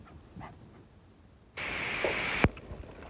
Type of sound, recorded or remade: recorded